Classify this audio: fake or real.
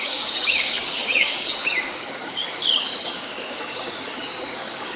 fake